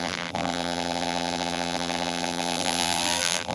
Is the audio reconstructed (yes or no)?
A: yes